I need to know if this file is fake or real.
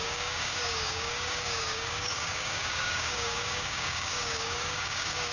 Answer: fake